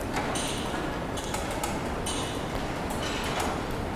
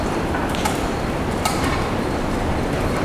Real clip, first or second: first